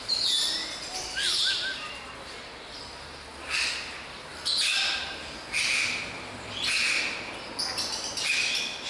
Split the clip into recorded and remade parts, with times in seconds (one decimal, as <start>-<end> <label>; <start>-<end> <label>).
0.0-8.9 recorded